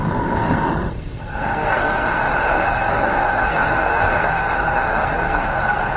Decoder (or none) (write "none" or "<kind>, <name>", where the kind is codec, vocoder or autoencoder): codec, SNAC